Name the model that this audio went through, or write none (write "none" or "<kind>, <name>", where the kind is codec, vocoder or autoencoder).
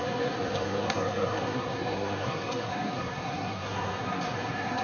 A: codec, SNAC